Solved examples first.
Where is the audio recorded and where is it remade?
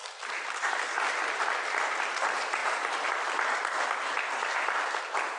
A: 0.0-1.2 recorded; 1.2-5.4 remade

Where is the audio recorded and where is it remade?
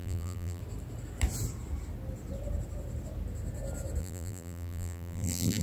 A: 0.0-0.6 remade; 0.6-4.0 recorded; 4.0-5.6 remade